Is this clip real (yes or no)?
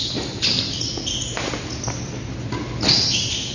yes